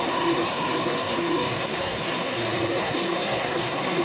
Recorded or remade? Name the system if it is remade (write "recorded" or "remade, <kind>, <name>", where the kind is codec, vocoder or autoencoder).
remade, codec, SNAC